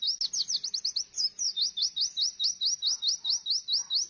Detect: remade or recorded recorded